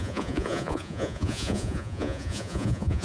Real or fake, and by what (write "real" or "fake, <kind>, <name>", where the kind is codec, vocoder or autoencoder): fake, vocoder, Vocos